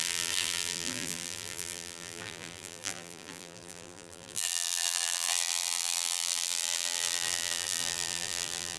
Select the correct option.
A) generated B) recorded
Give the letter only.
A